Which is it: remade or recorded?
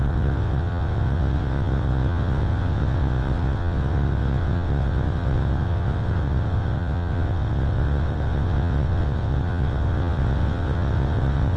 remade